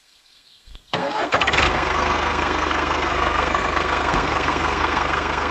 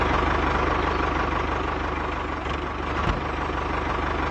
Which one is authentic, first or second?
second